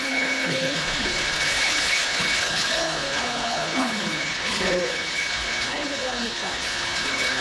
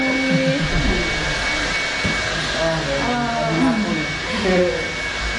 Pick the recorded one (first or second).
second